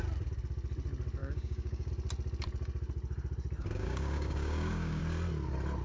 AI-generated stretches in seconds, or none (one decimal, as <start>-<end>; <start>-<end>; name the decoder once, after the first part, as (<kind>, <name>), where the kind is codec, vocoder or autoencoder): 1.2-1.9 (codec, DAC); 3.6-5.0